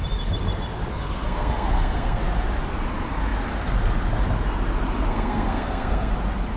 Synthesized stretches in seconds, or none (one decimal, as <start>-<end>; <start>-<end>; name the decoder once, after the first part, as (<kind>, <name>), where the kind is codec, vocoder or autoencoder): 0.9-2.2 (codec, SNAC); 5.1-6.1